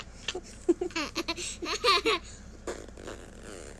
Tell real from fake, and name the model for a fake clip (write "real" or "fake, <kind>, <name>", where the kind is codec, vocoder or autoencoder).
real